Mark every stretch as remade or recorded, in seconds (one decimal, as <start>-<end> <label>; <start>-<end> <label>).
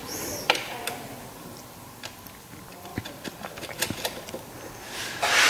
0.0-1.3 remade; 1.3-5.5 recorded